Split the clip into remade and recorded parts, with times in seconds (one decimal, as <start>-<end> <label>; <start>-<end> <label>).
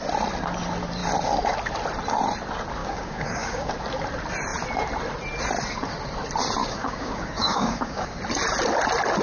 0.0-2.8 recorded; 2.8-3.7 remade; 3.7-6.6 recorded; 6.6-8.2 remade; 8.2-9.2 recorded